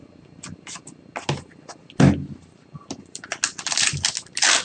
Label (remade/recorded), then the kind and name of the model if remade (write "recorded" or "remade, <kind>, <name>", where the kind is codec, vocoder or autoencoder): recorded